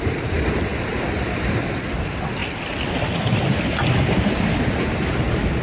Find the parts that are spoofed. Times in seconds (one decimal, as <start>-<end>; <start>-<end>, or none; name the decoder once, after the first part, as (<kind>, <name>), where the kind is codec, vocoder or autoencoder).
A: none